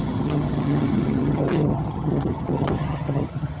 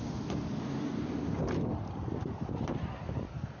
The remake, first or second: first